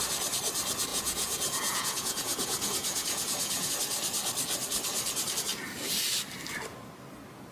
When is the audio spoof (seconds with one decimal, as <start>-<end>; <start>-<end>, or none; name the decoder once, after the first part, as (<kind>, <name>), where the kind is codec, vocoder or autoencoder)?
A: 0.9-3.7 (vocoder, Vocos)